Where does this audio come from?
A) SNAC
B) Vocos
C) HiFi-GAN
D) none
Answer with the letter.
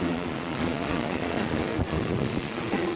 B